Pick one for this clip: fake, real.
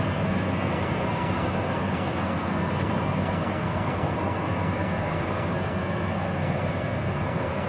fake